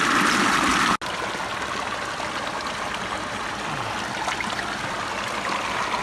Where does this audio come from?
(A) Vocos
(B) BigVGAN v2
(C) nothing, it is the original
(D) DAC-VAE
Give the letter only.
C